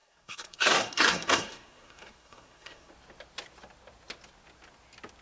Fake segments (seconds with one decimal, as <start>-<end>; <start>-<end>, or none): 0.0-2.9